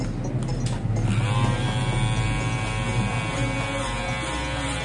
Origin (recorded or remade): recorded